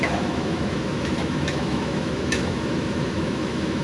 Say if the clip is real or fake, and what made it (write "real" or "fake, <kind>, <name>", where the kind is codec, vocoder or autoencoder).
fake, autoencoder, DAC-VAE